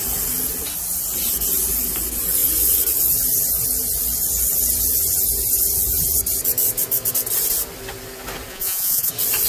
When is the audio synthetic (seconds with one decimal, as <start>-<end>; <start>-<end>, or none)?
8.5-9.1